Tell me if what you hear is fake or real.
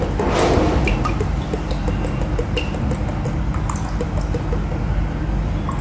real